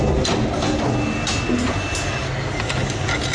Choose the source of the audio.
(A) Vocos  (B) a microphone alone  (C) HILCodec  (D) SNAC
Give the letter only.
B